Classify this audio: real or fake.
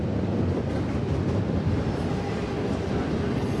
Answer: real